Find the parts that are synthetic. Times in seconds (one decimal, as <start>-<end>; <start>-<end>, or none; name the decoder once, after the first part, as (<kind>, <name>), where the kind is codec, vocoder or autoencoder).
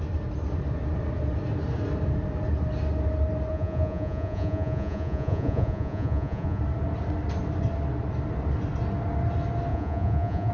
3.5-6.6 (vocoder, Vocos); 9.7-10.5